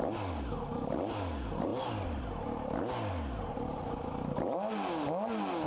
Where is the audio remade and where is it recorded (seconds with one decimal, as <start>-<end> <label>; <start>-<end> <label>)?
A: 0.0-5.7 recorded